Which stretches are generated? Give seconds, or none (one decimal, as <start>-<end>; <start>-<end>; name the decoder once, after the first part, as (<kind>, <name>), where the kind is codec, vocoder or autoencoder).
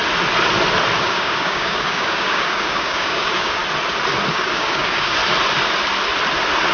1.0-3.6 (codec, DAC); 4.3-5.2